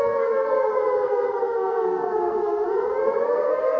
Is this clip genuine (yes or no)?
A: no